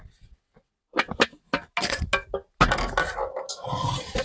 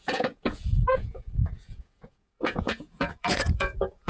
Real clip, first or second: first